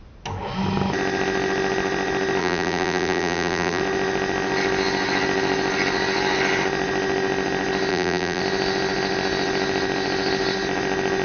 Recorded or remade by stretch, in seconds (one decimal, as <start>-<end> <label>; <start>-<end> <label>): 0.0-2.4 recorded; 2.4-3.8 remade; 3.8-7.9 recorded; 7.9-8.4 remade; 8.4-11.2 recorded